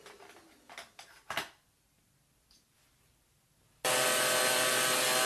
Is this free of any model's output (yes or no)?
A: yes